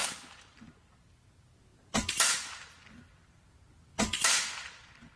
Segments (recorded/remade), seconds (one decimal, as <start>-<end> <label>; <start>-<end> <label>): 0.0-5.2 recorded